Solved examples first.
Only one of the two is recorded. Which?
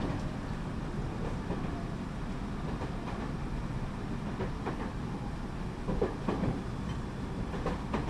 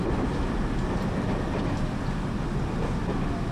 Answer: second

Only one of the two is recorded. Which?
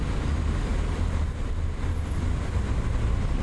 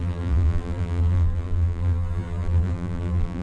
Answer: first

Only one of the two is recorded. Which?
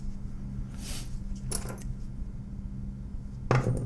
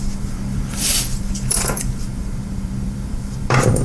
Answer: first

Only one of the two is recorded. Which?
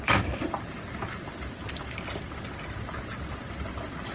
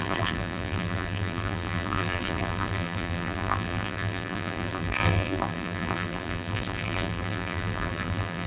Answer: first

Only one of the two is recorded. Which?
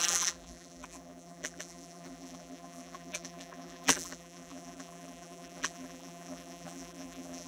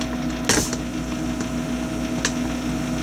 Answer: second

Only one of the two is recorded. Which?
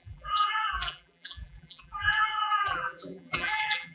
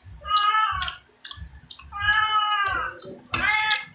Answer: second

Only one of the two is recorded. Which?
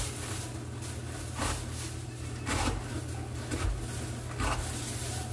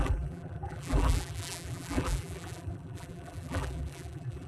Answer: first